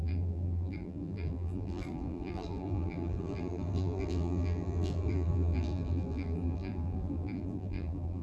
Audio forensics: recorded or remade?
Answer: remade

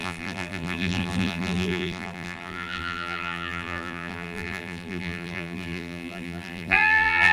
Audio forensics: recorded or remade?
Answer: remade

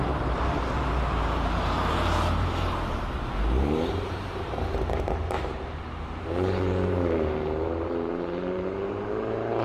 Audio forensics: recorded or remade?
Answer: remade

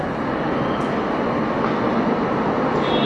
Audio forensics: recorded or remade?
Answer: recorded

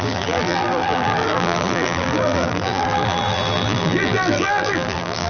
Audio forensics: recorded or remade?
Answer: remade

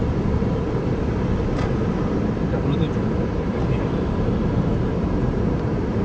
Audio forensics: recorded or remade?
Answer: remade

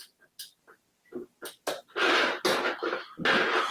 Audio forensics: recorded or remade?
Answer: recorded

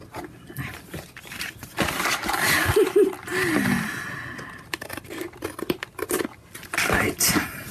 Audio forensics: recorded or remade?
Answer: recorded